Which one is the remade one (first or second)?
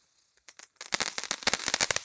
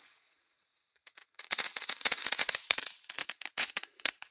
second